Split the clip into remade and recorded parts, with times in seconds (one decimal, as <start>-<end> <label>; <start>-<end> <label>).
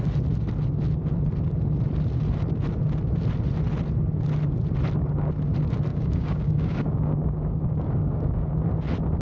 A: 0.0-5.9 recorded; 5.9-8.6 remade; 8.6-9.2 recorded